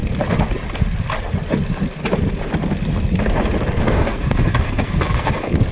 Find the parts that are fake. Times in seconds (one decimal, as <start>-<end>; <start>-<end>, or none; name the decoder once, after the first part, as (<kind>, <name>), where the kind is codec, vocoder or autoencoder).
3.8-5.7 (codec, SNAC)